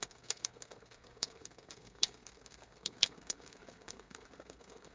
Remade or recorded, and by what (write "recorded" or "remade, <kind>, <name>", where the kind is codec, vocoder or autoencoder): remade, codec, SNAC